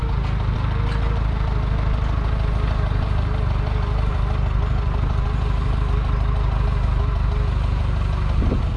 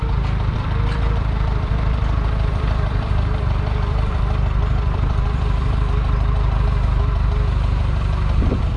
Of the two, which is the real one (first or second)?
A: first